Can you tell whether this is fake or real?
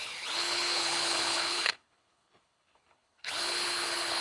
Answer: fake